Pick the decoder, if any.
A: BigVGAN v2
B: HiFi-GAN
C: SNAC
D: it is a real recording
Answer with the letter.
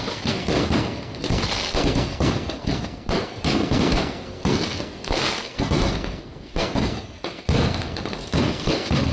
C